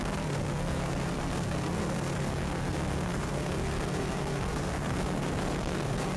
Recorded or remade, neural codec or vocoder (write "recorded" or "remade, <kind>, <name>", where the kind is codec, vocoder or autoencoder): remade, codec, SNAC